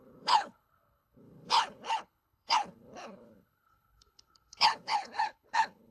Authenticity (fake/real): fake